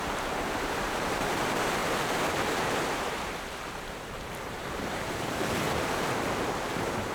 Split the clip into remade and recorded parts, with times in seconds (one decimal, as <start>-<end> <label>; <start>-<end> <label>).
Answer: 0.0-7.1 remade

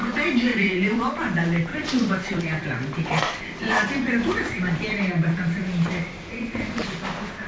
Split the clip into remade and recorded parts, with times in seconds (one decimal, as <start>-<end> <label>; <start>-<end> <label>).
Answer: 0.0-0.5 recorded; 0.5-1.1 remade; 1.1-1.7 recorded; 1.7-3.4 remade; 3.4-7.5 recorded

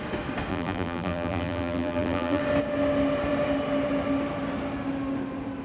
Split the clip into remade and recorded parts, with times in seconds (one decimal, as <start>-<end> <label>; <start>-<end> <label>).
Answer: 0.0-0.5 recorded; 0.5-2.4 remade; 2.4-5.6 recorded

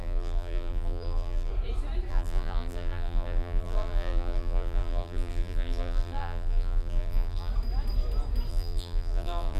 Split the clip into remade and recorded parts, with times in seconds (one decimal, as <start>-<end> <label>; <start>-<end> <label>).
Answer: 0.0-1.5 remade; 1.5-2.1 recorded; 2.1-7.5 remade; 7.5-8.5 recorded; 8.5-9.6 remade

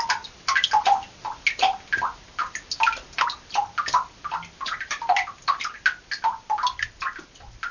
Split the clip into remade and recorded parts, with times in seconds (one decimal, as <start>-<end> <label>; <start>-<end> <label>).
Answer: 0.0-7.7 recorded